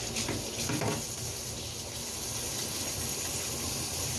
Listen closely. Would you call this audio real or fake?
real